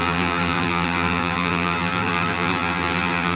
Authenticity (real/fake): fake